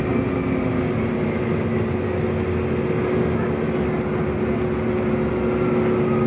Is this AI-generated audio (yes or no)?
no